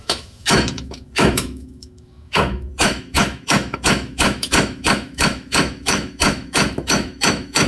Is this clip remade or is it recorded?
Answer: remade